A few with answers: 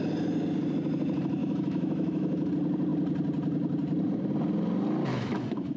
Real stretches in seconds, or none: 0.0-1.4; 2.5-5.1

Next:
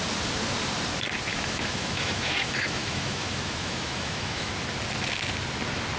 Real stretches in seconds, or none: 0.0-1.3; 4.5-6.0

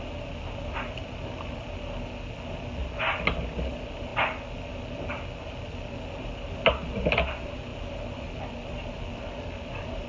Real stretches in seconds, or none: 0.0-10.1